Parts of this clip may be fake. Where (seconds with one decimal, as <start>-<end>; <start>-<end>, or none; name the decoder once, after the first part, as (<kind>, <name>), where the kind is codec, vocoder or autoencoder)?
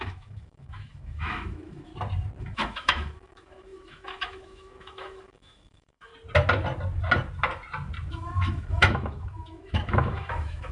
0.0-1.9 (autoencoder, DAC-VAE); 2.4-6.1; 8.1-10.7